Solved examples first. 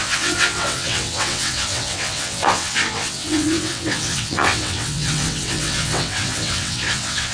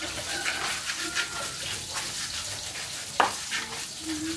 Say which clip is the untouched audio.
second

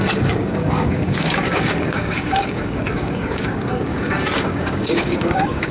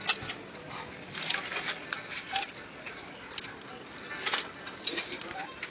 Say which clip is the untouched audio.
second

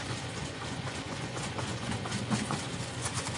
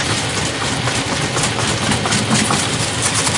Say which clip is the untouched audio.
second